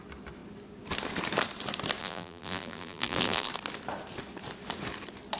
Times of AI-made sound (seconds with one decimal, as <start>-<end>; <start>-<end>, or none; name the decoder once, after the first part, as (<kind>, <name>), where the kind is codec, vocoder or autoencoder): 2.0-3.5 (vocoder, BigVGAN v2)